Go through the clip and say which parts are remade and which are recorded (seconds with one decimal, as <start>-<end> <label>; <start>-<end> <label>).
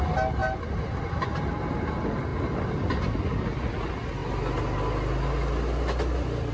0.0-6.5 recorded